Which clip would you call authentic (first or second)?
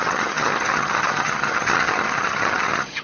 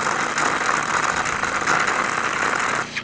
second